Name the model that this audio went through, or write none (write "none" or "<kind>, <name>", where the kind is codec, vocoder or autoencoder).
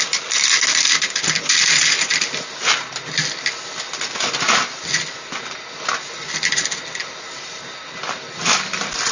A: none